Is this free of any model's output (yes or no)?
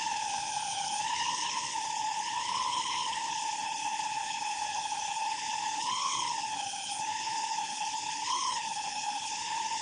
no